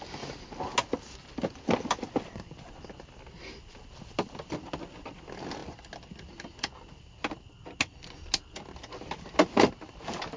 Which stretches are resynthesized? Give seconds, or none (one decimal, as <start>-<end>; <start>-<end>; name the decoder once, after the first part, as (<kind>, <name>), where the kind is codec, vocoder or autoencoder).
none